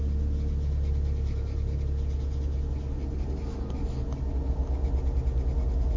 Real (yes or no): yes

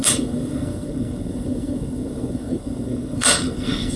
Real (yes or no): no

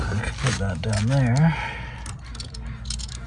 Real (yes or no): yes